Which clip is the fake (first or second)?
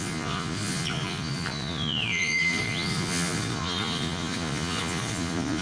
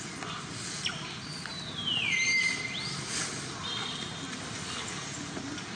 first